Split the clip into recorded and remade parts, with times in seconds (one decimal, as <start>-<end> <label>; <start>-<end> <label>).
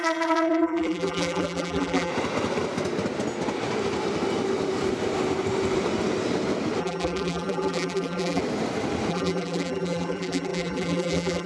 0.0-2.1 remade; 2.1-6.8 recorded; 6.8-8.4 remade; 8.4-9.1 recorded; 9.1-11.5 remade